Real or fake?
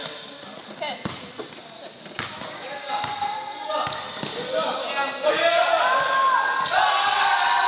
real